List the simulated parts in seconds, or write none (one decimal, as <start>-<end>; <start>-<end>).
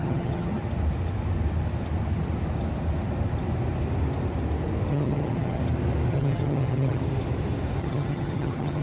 0.0-0.6; 4.9-5.6; 6.1-7.0; 7.8-8.8